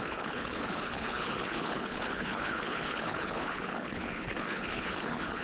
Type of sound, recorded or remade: remade